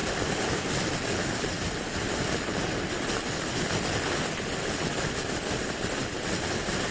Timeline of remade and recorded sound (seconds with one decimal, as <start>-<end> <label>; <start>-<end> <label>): 0.0-6.9 recorded